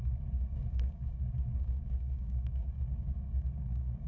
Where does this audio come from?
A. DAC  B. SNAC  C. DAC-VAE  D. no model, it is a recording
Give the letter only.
A